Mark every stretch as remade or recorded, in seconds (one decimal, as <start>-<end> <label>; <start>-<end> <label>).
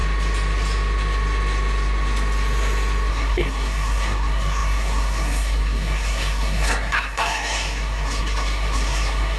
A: 0.0-3.1 recorded; 3.1-9.4 remade